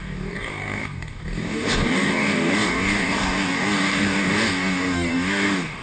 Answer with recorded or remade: remade